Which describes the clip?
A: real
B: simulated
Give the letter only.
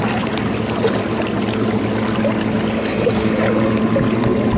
A